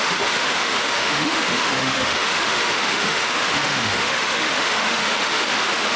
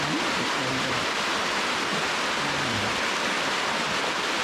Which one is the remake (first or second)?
first